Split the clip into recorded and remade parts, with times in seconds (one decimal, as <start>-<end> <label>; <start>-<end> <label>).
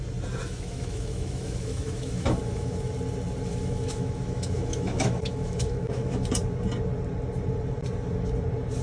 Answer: 0.0-0.4 recorded; 0.4-2.9 remade; 2.9-3.5 recorded; 3.5-6.3 remade; 6.3-8.8 recorded